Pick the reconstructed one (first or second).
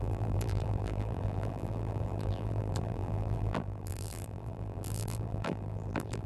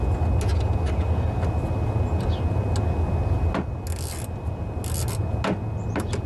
first